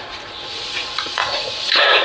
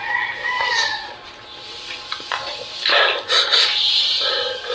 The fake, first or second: first